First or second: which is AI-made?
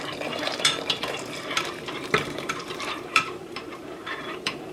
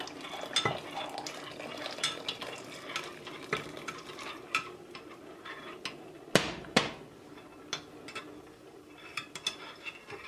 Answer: first